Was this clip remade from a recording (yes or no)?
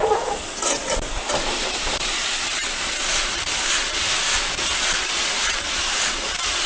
yes